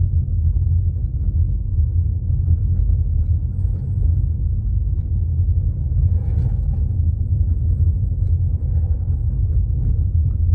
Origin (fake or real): real